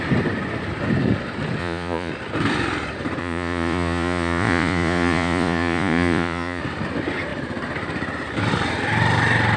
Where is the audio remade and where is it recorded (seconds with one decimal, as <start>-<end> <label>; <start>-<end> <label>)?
0.0-1.6 recorded; 1.6-2.1 remade; 2.1-3.2 recorded; 3.2-6.6 remade; 6.6-9.6 recorded